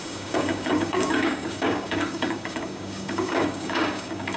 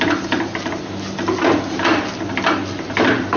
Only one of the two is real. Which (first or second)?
second